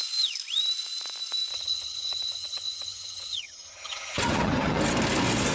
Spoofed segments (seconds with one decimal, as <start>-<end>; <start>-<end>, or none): 1.5-4.8